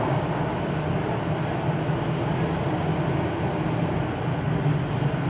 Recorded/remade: recorded